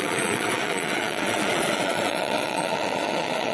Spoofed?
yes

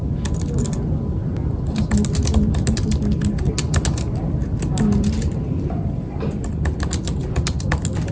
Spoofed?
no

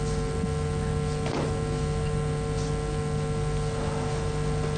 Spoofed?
no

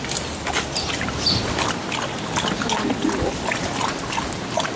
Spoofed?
no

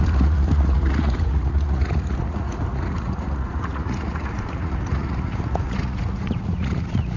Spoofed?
yes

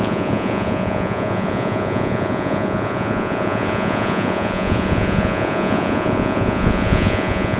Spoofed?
yes